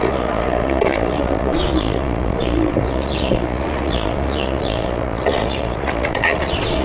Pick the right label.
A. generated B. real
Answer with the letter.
A